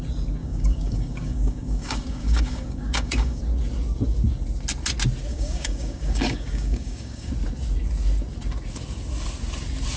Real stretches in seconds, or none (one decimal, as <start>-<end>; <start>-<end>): 0.0-0.4; 3.4-5.3; 7.3-10.0